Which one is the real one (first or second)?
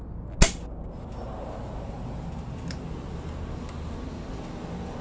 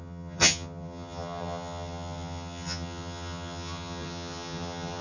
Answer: first